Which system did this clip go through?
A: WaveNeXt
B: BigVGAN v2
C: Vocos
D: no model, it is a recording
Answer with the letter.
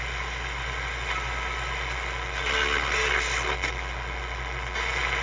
D